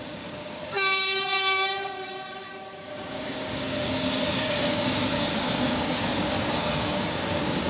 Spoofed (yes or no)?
yes